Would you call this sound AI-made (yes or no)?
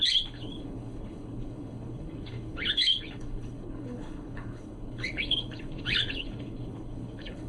yes